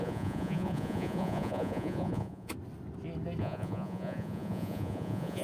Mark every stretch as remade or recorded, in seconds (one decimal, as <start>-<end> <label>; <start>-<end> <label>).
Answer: 0.0-2.5 remade; 2.5-3.4 recorded; 3.4-5.4 remade